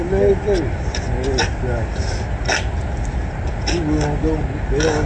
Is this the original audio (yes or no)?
yes